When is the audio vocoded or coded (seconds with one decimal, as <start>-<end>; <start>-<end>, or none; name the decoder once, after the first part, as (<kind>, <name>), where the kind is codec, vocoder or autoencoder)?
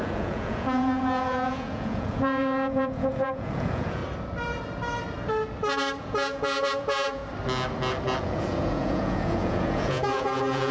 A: 0.0-4.0 (vocoder, Vocos); 6.0-7.2; 8.2-10.7